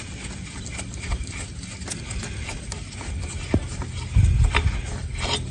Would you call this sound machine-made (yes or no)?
no